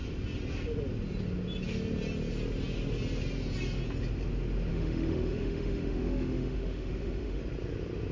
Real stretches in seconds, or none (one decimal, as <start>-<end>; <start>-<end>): 0.0-4.7; 7.4-8.1